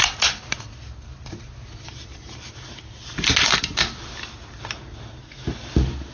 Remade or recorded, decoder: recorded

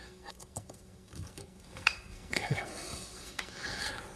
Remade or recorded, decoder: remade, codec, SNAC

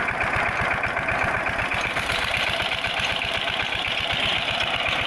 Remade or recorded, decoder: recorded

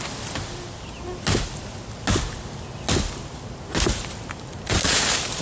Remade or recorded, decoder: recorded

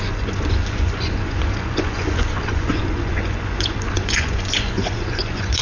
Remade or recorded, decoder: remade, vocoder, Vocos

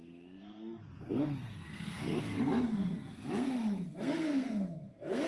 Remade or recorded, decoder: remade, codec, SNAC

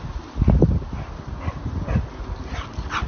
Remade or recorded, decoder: recorded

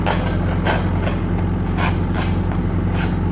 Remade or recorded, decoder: recorded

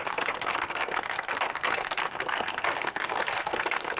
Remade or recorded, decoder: remade, codec, SNAC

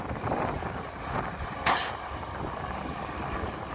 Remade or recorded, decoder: recorded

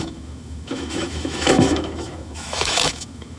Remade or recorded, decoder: remade, autoencoder, DAC-VAE